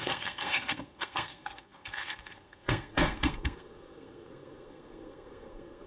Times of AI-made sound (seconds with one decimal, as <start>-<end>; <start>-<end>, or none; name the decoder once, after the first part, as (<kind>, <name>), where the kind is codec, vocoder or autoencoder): 0.0-5.9 (codec, SNAC)